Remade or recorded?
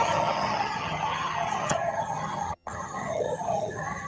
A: remade